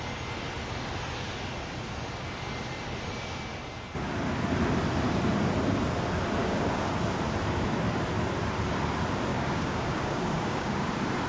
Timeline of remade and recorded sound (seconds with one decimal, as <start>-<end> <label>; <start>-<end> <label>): 0.0-6.4 recorded; 6.4-6.9 remade; 6.9-9.3 recorded; 9.3-10.9 remade; 10.9-11.3 recorded